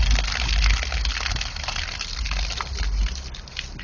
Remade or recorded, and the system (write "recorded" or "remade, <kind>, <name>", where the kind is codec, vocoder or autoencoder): recorded